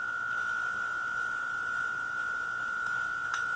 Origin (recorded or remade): recorded